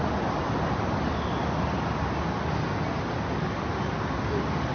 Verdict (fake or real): real